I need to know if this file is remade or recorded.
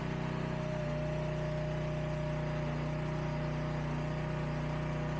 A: recorded